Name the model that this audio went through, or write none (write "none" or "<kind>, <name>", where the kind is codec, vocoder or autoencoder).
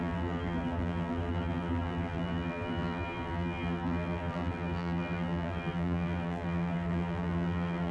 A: vocoder, BigVGAN v2